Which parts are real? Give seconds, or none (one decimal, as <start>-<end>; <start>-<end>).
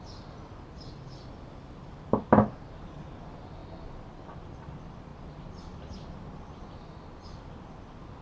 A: 0.0-8.2